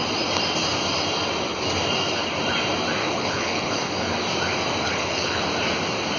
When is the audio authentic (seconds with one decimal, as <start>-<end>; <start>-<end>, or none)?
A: 0.0-3.0; 3.9-4.8; 5.4-6.2